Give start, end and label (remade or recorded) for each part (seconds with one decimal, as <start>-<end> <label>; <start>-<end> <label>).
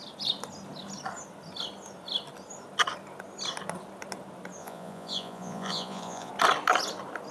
0.0-4.6 recorded; 4.6-6.3 remade; 6.3-7.3 recorded